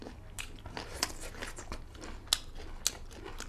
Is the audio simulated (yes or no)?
no